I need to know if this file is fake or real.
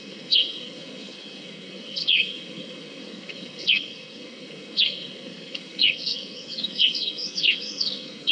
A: fake